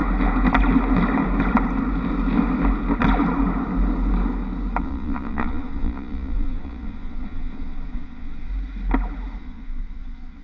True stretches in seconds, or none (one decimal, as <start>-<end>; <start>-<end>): 0.0-4.8; 8.5-9.4

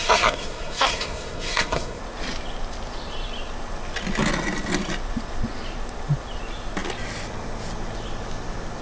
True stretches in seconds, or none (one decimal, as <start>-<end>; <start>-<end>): 2.0-8.8

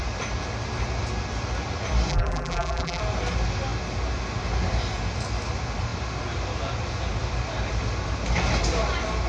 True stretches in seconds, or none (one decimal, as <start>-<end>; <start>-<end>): 0.0-2.1; 3.0-9.3

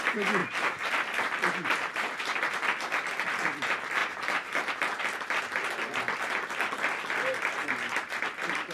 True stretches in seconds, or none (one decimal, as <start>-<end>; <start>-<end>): 0.0-0.4; 2.2-4.0; 5.0-8.7

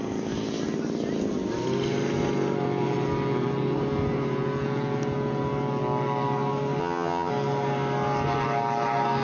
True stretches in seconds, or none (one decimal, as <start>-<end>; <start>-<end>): 0.0-6.8; 7.3-9.2